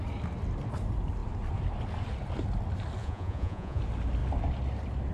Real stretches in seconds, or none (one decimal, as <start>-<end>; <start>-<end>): 0.0-3.0; 3.8-5.1